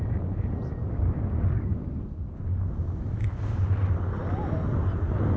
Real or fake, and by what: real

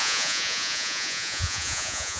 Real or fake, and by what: fake, vocoder, Vocos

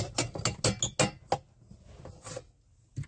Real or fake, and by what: real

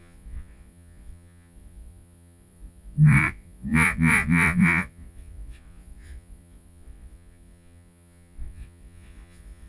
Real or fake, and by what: fake, vocoder, Vocos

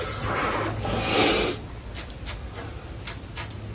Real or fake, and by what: real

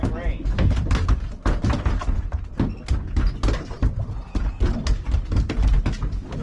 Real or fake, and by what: real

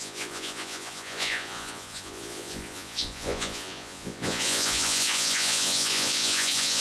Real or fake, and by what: fake, vocoder, Vocos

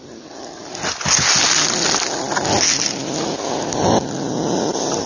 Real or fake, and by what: real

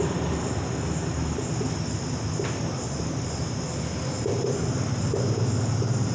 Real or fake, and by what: real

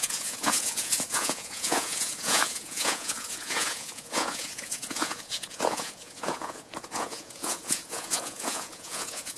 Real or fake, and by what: fake, vocoder, Vocos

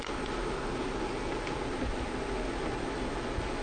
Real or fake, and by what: real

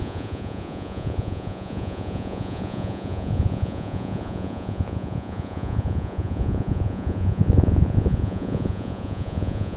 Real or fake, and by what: fake, vocoder, Vocos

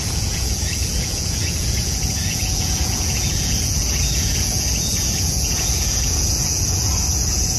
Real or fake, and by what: fake, vocoder, Vocos